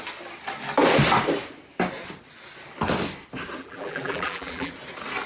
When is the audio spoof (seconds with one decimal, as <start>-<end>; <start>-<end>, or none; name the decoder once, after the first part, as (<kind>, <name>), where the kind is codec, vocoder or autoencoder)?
3.6-4.7 (vocoder, BigVGAN v2)